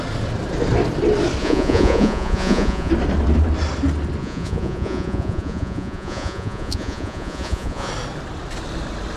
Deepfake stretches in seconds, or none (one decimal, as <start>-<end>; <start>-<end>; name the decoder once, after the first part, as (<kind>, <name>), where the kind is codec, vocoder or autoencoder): 1.4-2.9 (vocoder, Vocos); 4.2-7.9